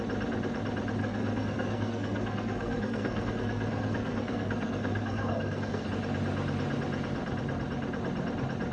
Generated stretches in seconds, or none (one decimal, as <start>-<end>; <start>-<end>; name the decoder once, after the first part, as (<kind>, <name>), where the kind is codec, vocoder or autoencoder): 1.0-5.9 (codec, SNAC)